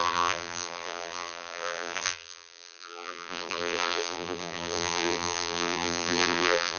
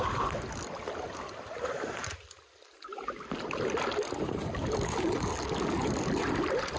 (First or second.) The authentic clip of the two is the second